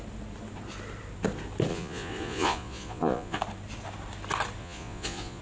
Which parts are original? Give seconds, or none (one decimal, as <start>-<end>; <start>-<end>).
0.0-1.7; 3.4-4.6